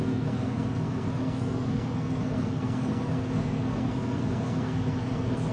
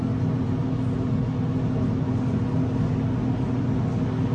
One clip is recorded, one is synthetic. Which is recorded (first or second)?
second